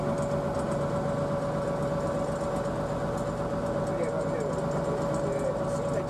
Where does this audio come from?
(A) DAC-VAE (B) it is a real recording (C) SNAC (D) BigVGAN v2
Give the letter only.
B